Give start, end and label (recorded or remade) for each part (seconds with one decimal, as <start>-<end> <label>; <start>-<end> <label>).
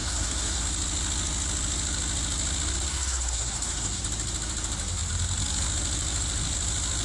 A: 0.0-0.6 remade; 0.6-2.9 recorded; 2.9-4.0 remade; 4.0-7.0 recorded